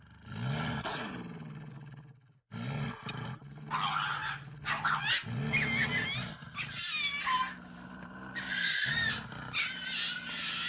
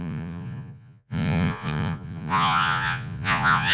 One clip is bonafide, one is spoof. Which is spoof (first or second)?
second